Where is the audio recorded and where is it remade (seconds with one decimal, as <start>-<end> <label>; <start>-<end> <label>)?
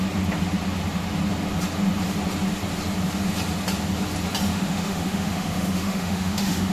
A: 0.0-4.5 recorded; 4.5-6.7 remade